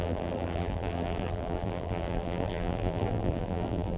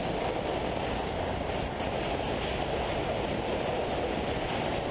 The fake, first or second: first